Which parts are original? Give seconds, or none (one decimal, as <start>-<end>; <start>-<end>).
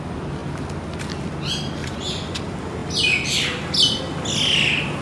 0.0-1.8; 2.4-5.0